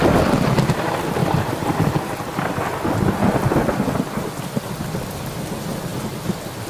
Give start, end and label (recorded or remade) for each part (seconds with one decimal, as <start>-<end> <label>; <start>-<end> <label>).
0.0-1.2 recorded; 1.2-1.9 remade; 1.9-6.7 recorded